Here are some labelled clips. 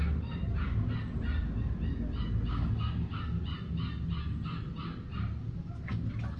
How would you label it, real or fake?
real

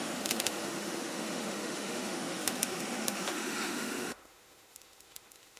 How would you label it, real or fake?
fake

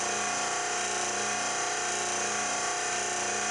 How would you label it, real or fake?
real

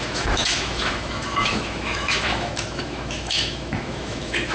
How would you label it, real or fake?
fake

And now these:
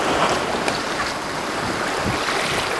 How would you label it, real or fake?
real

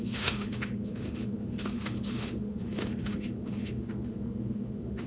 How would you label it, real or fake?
fake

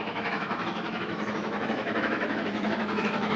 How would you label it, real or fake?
fake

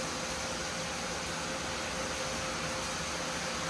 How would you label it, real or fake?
real